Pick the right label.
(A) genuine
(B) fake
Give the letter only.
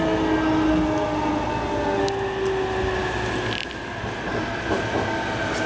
A